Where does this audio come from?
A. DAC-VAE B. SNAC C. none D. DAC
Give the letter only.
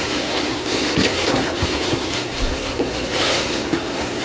B